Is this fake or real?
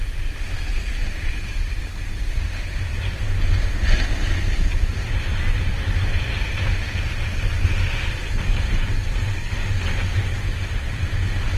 real